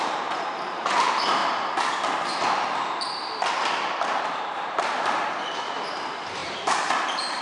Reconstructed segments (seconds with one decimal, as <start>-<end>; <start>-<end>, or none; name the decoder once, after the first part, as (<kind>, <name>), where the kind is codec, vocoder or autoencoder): 0.0-1.4 (vocoder, BigVGAN v2); 4.2-7.4